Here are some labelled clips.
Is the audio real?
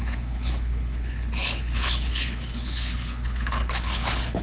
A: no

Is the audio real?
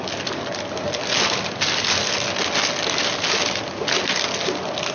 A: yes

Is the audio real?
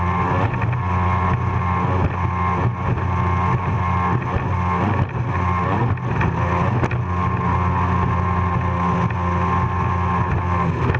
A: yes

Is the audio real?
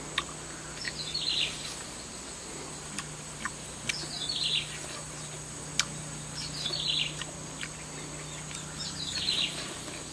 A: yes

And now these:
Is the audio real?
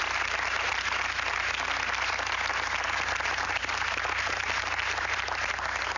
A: yes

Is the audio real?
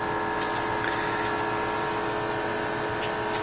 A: yes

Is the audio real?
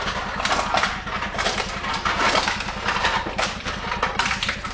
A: no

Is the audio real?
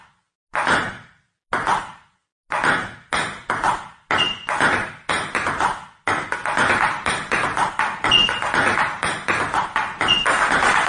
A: yes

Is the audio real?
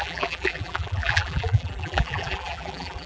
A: no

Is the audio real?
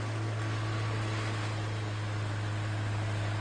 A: yes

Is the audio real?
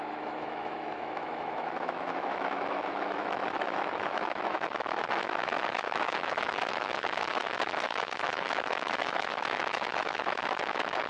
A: no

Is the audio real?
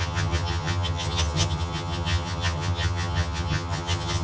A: no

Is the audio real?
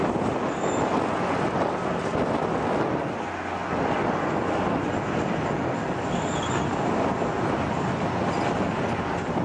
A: yes